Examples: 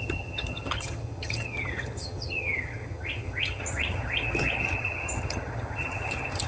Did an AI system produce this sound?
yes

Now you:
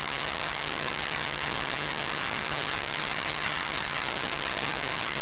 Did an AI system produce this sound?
yes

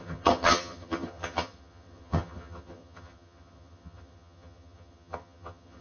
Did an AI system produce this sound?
yes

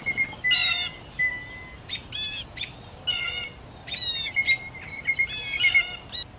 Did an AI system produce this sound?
no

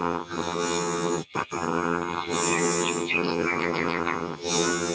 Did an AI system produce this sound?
yes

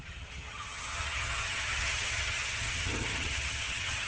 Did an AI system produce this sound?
yes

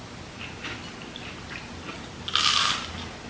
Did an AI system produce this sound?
no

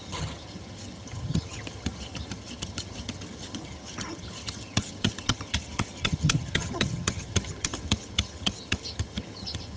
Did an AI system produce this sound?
yes